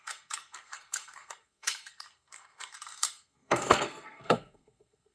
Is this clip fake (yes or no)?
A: yes